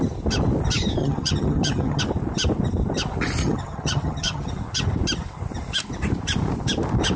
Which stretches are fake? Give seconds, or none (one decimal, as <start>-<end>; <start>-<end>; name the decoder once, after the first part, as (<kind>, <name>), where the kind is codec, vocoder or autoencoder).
1.0-2.0 (vocoder, HiFi-GAN); 3.4-4.5